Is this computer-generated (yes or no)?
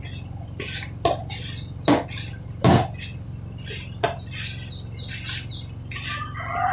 no